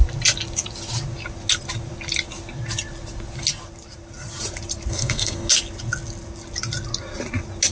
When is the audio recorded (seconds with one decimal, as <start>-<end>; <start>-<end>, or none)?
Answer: 0.0-4.9; 5.5-7.7